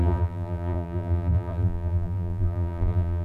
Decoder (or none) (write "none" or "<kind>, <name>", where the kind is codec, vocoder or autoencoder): vocoder, BigVGAN v2